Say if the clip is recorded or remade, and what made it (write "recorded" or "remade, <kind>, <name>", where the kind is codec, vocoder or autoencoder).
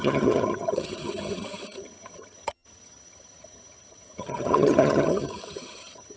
remade, vocoder, HiFi-GAN